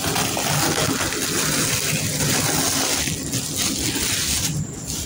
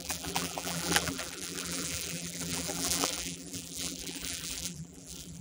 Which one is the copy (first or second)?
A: second